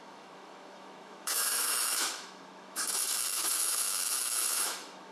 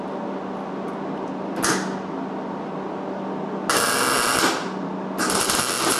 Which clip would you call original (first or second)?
second